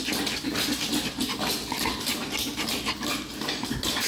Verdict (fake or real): real